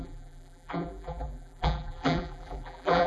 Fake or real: fake